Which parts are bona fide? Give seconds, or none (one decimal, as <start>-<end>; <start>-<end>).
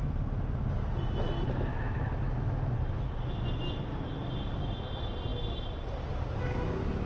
0.0-1.7; 2.7-7.1